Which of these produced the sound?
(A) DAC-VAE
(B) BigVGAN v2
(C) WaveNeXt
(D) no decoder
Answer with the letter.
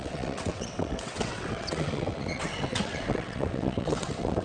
C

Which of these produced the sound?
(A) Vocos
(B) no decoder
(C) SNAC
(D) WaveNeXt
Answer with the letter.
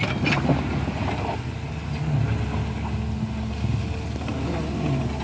B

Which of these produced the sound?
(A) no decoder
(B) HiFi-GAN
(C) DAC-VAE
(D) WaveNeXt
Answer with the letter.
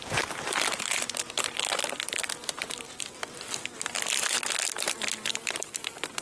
A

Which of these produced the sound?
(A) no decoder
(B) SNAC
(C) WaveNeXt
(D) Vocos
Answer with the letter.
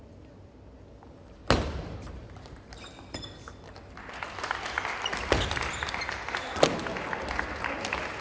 A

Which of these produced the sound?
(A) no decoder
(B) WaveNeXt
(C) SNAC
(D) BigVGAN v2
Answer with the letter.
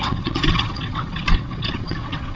B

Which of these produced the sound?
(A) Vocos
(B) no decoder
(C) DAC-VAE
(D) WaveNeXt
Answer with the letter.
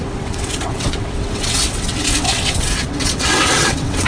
D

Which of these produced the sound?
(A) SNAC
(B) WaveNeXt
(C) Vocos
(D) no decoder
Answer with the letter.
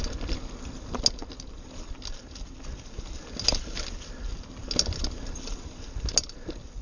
D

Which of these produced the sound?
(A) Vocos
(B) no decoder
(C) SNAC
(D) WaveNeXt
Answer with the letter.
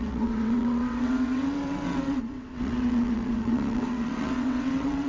D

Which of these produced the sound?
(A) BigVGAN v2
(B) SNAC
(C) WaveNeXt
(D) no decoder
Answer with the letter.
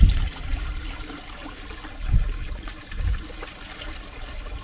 D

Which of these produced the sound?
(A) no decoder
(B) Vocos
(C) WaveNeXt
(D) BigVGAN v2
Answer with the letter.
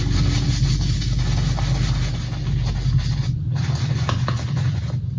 A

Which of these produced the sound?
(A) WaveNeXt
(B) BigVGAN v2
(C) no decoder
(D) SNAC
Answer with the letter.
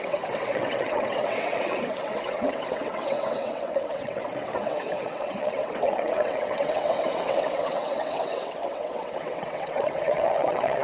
A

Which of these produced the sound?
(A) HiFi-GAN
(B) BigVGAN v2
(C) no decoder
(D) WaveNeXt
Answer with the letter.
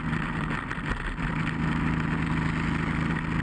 C